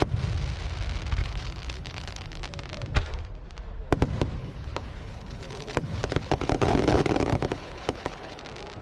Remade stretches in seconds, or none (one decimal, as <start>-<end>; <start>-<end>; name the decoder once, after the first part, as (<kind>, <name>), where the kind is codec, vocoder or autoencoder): 1.2-2.4 (codec, HILCodec); 4.4-8.4